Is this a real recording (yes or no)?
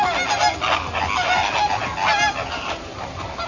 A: yes